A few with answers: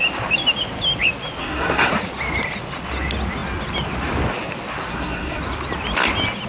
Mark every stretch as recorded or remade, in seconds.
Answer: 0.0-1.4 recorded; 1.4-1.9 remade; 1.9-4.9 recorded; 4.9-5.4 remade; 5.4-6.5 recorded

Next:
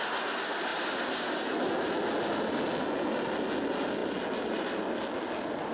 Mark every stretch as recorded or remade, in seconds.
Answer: 0.0-5.7 recorded

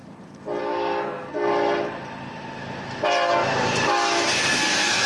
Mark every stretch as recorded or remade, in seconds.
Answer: 0.0-0.6 recorded; 0.6-1.5 remade; 1.5-4.6 recorded; 4.6-5.1 remade

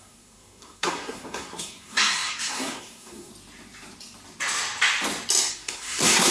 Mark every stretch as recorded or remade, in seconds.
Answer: 0.0-3.3 remade; 3.3-5.5 recorded; 5.5-6.3 remade

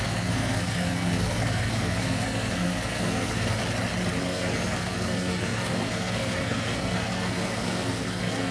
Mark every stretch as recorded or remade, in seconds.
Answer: 0.0-3.6 remade; 3.6-4.2 recorded; 4.2-8.5 remade

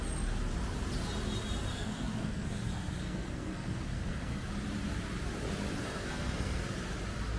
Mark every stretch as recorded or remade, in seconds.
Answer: 0.0-1.7 recorded; 1.7-4.4 remade; 4.4-5.8 recorded; 5.8-6.6 remade; 6.6-7.4 recorded